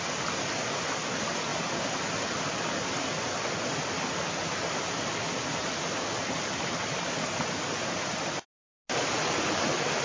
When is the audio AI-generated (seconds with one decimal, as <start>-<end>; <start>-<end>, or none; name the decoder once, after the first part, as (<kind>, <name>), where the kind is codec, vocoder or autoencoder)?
none